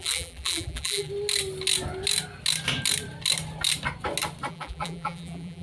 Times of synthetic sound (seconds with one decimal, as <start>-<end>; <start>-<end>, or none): 0.0-1.1; 4.5-5.6